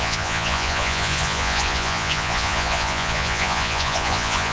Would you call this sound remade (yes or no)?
yes